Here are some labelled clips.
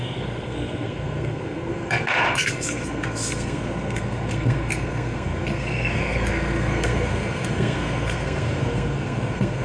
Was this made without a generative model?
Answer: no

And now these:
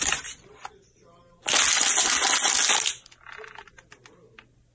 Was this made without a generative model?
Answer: yes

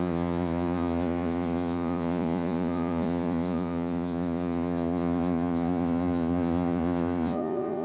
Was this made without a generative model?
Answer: no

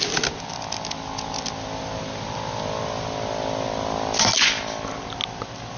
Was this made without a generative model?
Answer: yes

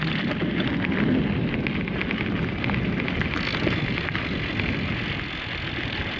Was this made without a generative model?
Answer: yes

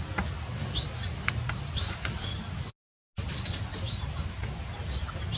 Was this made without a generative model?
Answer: yes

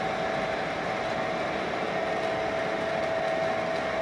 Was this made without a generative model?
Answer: yes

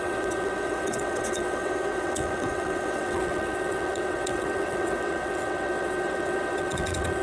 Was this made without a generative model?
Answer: no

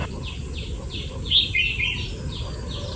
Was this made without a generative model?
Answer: yes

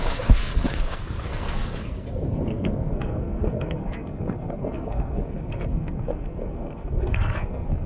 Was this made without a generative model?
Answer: no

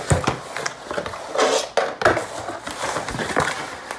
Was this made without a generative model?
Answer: yes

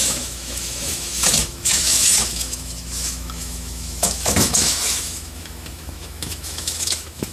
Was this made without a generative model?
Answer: no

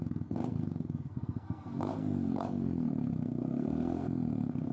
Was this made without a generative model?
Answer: no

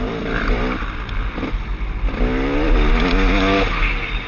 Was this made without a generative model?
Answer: yes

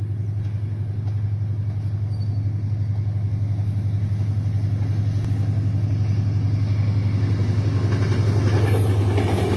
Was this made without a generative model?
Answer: yes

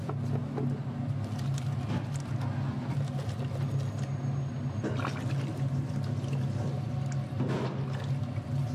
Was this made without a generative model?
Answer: yes